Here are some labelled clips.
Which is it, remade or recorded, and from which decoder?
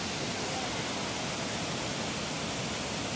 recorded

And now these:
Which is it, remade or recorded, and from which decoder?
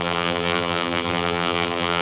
remade, vocoder, BigVGAN v2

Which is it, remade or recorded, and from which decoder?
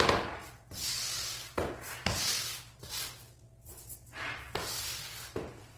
recorded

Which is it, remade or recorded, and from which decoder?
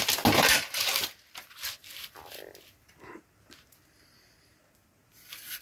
recorded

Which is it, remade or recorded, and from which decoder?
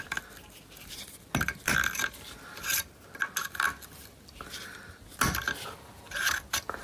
recorded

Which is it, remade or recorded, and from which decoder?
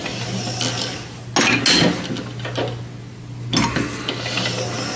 recorded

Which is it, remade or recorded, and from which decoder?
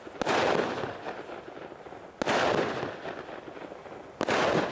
recorded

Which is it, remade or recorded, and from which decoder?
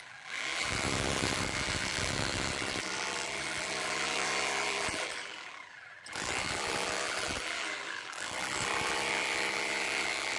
remade, vocoder, BigVGAN v2